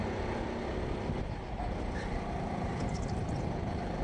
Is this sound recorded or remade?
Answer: recorded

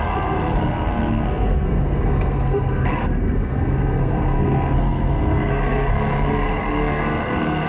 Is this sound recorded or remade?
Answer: remade